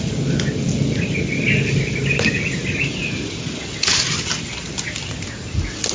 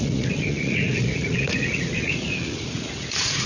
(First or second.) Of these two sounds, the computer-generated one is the second